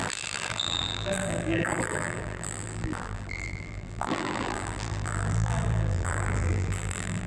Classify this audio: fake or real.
fake